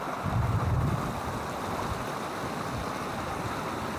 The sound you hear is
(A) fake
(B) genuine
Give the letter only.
B